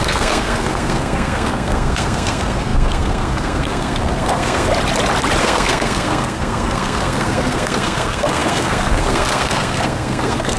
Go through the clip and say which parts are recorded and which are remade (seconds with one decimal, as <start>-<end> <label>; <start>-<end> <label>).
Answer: 0.0-4.7 remade; 4.7-5.4 recorded; 5.4-10.6 remade